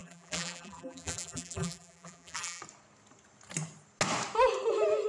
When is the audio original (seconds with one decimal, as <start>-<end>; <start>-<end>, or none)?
2.6-5.1